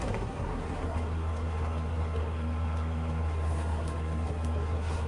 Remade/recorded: remade